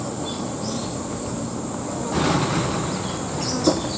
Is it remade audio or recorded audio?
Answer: recorded